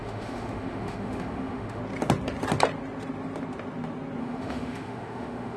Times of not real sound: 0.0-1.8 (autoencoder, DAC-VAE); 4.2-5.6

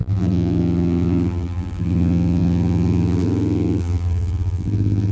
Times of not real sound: 0.0-5.1 (vocoder, BigVGAN v2)

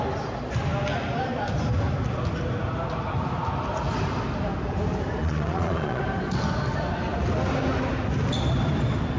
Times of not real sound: 5.2-6.0 (vocoder, Vocos)

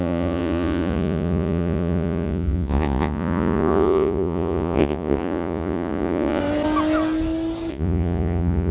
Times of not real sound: 0.0-6.4 (vocoder, Vocos); 7.7-8.7

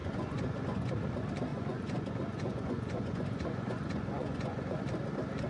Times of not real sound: 0.0-0.9 (vocoder, Vocos); 1.5-4.8

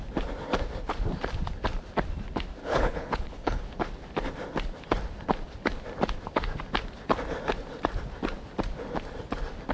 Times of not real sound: 2.6-3.6 (codec, HILCodec)

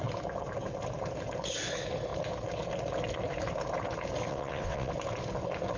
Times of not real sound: 4.3-4.9 (vocoder, WaveNeXt)